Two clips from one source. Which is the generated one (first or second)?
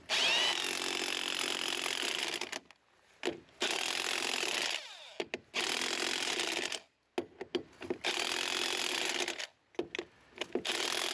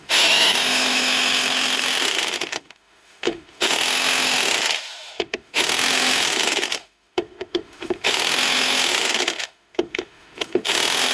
second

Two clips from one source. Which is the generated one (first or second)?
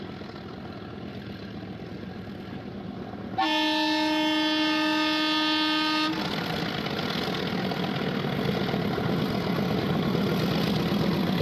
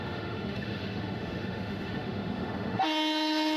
second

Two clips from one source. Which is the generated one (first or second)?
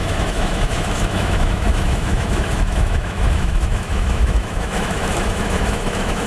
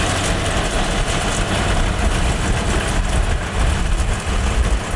first